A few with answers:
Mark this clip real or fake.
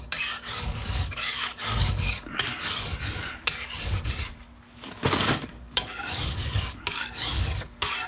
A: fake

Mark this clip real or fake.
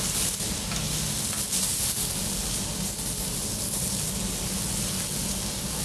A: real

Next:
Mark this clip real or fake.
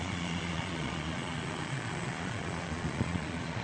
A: fake